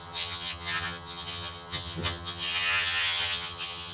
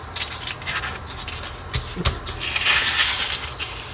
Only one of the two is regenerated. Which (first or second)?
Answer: first